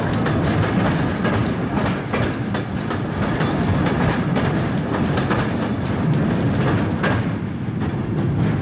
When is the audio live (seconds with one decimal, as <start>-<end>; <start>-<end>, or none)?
0.0-8.6